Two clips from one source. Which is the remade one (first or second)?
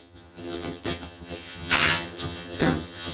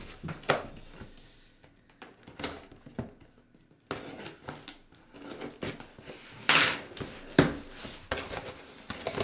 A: first